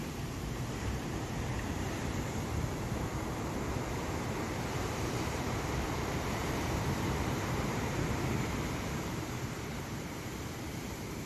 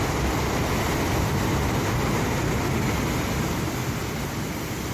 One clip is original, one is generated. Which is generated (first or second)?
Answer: first